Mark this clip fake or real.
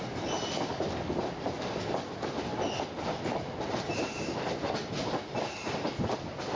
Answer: real